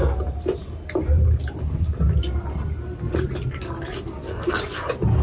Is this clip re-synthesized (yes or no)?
no